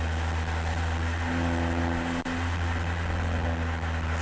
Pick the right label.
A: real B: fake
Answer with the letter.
A